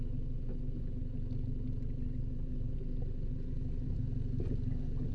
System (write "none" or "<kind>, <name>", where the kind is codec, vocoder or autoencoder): none